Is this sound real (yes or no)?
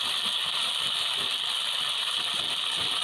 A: yes